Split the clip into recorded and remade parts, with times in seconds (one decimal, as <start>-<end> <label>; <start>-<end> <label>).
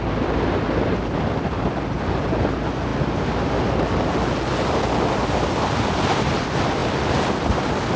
0.0-8.0 recorded